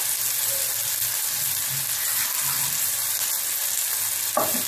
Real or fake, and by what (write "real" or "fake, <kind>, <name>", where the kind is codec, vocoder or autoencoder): real